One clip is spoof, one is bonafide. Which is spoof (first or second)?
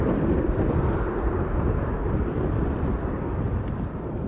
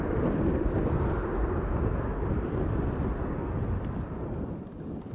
first